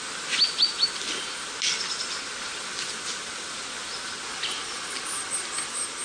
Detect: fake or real real